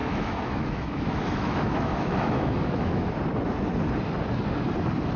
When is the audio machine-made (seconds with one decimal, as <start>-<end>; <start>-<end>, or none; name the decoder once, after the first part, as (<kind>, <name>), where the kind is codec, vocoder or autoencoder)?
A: 0.0-3.1 (autoencoder, DAC-VAE)